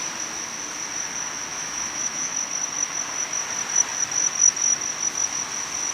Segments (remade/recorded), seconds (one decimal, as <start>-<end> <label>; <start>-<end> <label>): 0.0-1.5 recorded; 1.5-2.3 remade; 2.3-5.9 recorded